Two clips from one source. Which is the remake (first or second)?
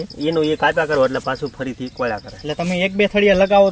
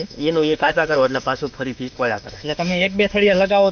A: second